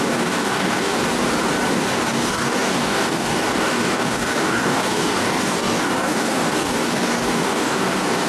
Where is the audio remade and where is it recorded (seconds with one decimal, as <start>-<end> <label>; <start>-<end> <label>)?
0.0-1.0 remade; 1.0-1.7 recorded; 1.7-8.3 remade